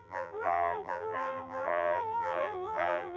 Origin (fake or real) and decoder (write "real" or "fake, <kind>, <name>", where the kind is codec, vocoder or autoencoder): fake, vocoder, BigVGAN v2